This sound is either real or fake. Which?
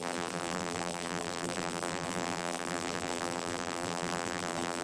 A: fake